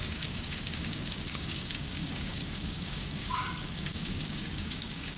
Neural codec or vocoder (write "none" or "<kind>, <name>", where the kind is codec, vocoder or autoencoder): codec, DAC